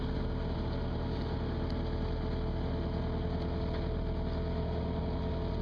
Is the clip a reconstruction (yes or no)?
no